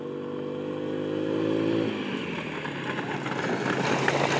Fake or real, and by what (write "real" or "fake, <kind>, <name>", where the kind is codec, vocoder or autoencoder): real